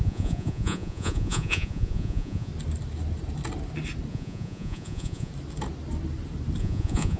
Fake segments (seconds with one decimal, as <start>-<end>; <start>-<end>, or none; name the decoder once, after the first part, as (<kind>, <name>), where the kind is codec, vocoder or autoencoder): 0.0-2.5 (vocoder, Vocos); 4.1-5.3; 6.6-7.2